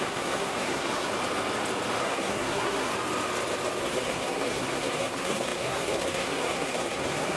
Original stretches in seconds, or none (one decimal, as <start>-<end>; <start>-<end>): 1.1-2.0; 2.9-3.8